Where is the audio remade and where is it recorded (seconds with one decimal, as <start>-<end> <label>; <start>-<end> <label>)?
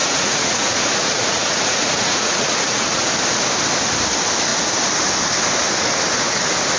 0.0-3.1 remade; 3.1-6.8 recorded